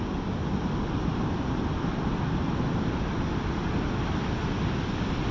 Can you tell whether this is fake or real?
real